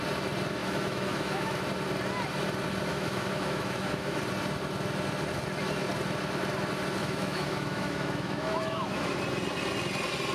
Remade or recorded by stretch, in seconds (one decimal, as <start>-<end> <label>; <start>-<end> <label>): 0.0-0.6 recorded; 0.6-1.6 remade; 1.6-2.9 recorded; 2.9-4.2 remade; 4.2-7.0 recorded; 7.0-9.2 remade; 9.2-10.3 recorded